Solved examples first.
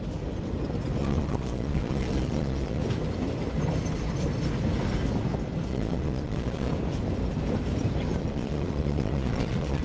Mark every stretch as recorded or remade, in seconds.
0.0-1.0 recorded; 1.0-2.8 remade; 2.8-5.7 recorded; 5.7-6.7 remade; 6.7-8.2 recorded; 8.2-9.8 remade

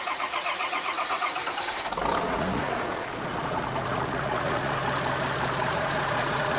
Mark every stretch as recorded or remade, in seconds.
0.0-1.4 remade; 1.4-2.2 recorded; 2.2-4.8 remade; 4.8-5.7 recorded; 5.7-6.6 remade

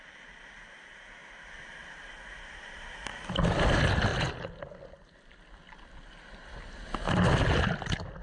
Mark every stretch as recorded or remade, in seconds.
0.0-8.2 recorded

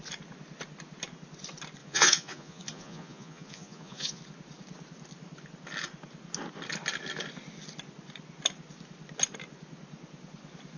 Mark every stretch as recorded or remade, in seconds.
0.0-1.8 recorded; 1.8-4.2 remade; 4.2-10.8 recorded